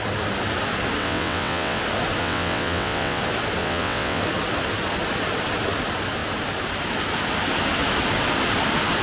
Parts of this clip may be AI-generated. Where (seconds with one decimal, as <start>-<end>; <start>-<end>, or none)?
1.0-1.8; 2.2-3.2; 3.6-4.2